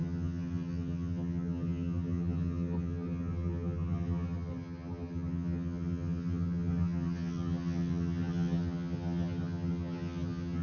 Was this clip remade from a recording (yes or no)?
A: yes